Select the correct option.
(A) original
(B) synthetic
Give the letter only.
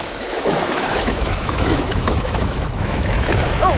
B